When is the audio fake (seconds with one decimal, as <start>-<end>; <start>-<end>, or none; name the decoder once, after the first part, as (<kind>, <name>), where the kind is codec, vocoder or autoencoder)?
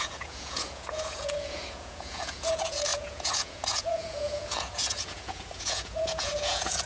0.0-6.9 (vocoder, Vocos)